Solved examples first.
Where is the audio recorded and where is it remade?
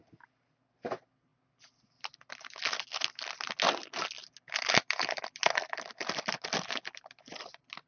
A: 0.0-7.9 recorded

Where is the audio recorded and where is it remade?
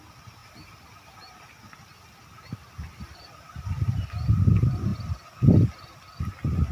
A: 0.0-6.7 recorded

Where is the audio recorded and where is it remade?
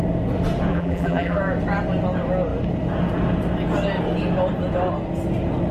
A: 0.0-0.7 recorded; 0.7-1.4 remade; 1.4-5.7 recorded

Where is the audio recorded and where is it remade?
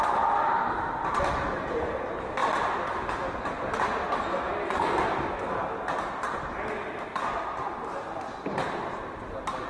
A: 0.0-9.7 recorded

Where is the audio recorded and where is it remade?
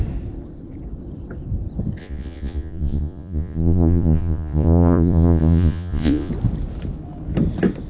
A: 0.0-2.0 recorded; 2.0-6.3 remade; 6.3-7.9 recorded